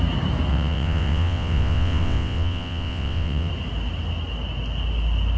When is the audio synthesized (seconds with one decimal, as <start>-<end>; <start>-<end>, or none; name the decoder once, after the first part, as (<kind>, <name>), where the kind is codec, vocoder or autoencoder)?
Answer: 0.5-3.5 (vocoder, WaveNeXt)